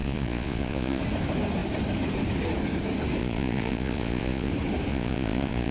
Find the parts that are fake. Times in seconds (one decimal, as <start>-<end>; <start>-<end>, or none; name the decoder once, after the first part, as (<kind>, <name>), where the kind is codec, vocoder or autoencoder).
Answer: 0.0-1.0 (vocoder, Vocos); 3.2-4.5; 4.9-5.7